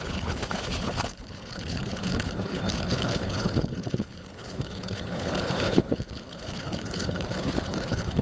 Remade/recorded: remade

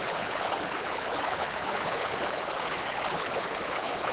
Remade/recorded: remade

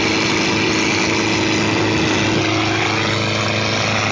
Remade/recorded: recorded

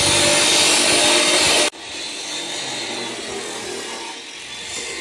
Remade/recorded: recorded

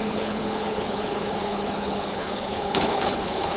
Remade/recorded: remade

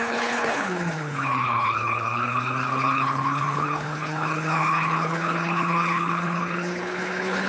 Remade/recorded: remade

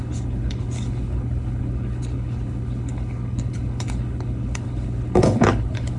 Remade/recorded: remade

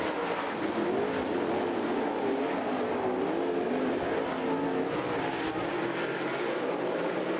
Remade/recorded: recorded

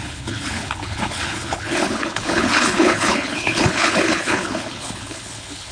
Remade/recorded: remade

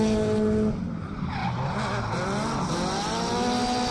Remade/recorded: recorded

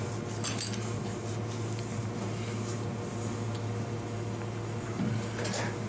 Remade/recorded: recorded